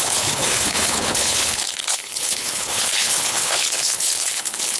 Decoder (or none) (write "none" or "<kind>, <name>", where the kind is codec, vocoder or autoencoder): codec, HILCodec